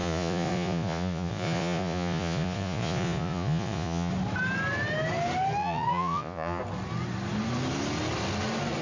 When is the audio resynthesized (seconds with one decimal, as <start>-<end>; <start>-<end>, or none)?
0.0-4.1; 5.6-6.6